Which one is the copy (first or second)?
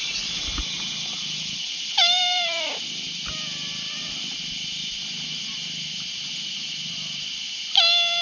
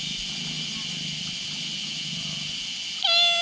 first